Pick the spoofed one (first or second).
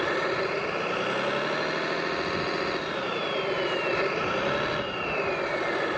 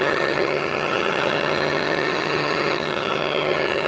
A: second